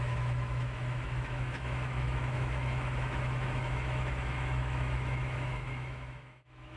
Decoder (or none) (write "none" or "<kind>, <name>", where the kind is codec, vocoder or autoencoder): autoencoder, DAC-VAE